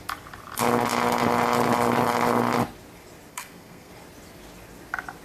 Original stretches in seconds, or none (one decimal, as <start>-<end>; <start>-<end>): 0.0-3.3; 3.9-5.2

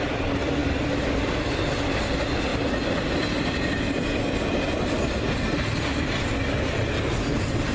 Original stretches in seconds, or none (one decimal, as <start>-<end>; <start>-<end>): 0.0-0.6; 1.1-7.7

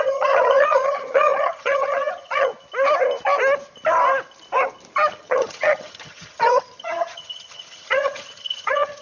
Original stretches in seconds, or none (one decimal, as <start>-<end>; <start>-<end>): 2.5-5.1